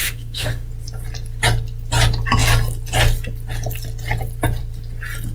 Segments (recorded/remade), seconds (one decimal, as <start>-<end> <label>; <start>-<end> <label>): 0.0-0.7 remade; 0.7-5.3 recorded